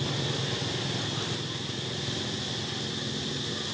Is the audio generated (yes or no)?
no